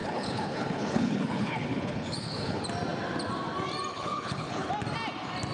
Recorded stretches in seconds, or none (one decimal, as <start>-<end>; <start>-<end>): 2.6-3.9; 4.7-5.5